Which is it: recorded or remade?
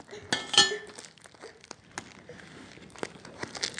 recorded